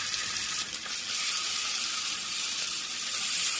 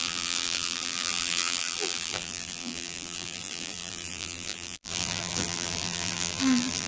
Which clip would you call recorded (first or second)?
first